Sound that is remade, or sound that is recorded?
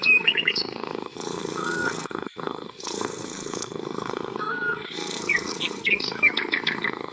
remade